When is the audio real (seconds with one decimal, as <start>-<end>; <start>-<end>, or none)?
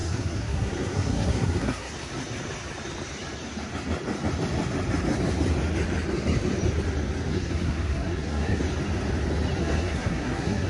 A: 1.9-7.3; 8.6-9.6